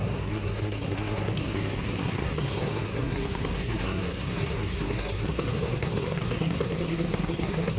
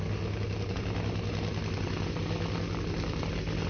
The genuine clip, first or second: second